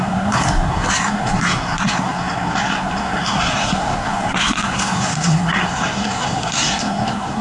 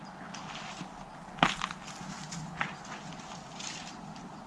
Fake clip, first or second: first